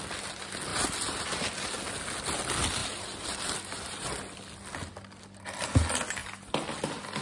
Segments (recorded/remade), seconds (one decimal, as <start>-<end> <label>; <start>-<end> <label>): 0.0-0.7 recorded; 0.7-1.2 remade; 1.2-2.8 recorded; 2.8-4.1 remade; 4.1-7.2 recorded